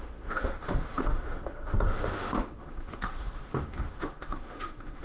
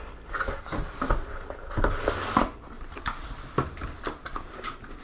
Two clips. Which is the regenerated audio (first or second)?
first